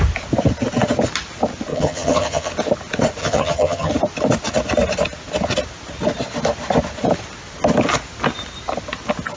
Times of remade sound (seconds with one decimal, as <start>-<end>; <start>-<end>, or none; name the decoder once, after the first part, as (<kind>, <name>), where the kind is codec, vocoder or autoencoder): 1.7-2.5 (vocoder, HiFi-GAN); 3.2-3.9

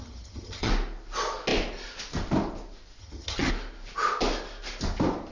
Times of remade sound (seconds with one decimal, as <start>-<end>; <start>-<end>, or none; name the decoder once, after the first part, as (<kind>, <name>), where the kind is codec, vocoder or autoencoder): 0.0-0.7 (vocoder, HiFi-GAN); 3.0-3.5

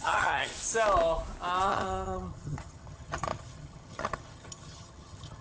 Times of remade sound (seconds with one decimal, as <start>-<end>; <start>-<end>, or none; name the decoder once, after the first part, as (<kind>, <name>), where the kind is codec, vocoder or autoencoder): 0.0-0.5 (vocoder, HiFi-GAN); 1.6-5.4

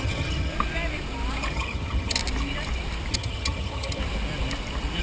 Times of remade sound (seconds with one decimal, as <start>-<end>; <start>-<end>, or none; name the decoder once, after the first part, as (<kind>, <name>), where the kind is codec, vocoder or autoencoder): 0.0-0.5 (vocoder, HiFi-GAN); 1.5-2.2; 3.1-4.0